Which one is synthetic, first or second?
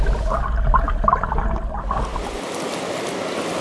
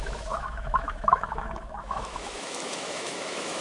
second